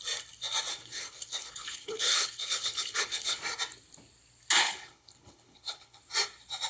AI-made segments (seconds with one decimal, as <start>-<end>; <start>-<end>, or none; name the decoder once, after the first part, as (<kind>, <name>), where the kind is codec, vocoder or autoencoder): 0.7-3.4 (codec, HILCodec); 4.6-6.0